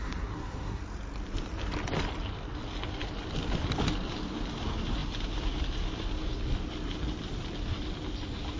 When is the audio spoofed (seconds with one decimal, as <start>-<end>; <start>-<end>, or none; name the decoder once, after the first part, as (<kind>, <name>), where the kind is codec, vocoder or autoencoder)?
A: 0.0-0.8 (codec, SNAC)